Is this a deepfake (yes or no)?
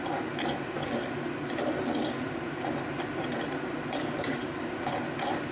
no